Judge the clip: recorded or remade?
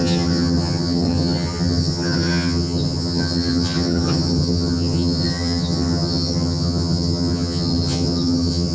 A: remade